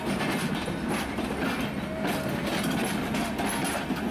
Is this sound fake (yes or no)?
no